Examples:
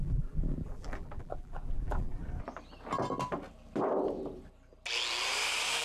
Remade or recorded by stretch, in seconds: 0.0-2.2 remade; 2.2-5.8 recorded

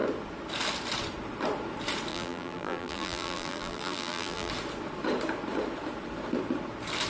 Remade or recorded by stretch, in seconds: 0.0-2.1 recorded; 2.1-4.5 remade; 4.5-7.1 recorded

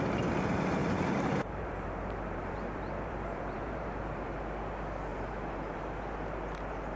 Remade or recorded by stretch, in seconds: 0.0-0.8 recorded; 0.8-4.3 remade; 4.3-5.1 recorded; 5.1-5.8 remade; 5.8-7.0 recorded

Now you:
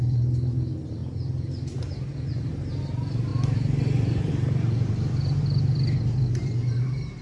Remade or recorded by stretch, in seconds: 0.0-1.0 remade; 1.0-2.5 recorded; 2.5-7.2 remade

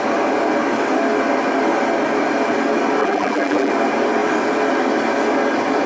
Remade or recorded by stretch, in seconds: 0.0-3.0 recorded; 3.0-3.7 remade; 3.7-5.9 recorded

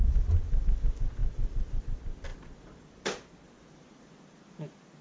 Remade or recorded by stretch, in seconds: 0.0-5.0 recorded

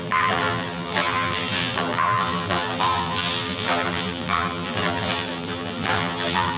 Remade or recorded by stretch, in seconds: 0.0-6.6 remade